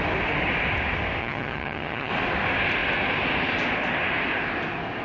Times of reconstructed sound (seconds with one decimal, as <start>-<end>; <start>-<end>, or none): 1.2-2.1